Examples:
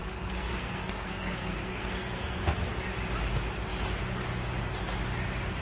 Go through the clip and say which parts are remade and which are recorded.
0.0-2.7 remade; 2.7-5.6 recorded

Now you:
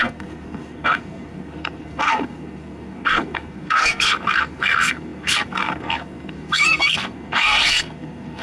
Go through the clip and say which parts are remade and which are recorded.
0.0-8.4 remade

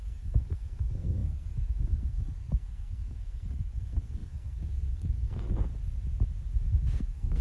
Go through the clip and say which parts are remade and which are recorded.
0.0-5.7 remade; 5.7-6.6 recorded; 6.6-7.4 remade

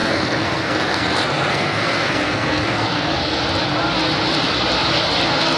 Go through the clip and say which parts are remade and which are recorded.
0.0-3.4 remade; 3.4-5.6 recorded

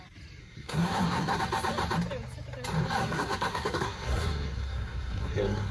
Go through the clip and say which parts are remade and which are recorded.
0.0-0.4 recorded; 0.4-1.4 remade; 1.4-3.0 recorded; 3.0-5.7 remade

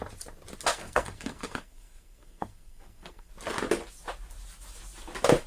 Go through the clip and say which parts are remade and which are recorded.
0.0-0.7 recorded; 0.7-3.3 remade; 3.3-5.5 recorded

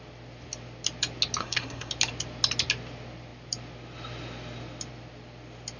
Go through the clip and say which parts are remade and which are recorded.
0.0-1.4 recorded; 1.4-1.9 remade; 1.9-5.8 recorded

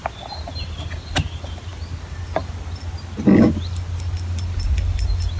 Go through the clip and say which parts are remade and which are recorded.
0.0-5.4 recorded